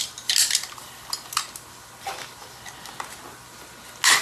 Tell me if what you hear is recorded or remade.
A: recorded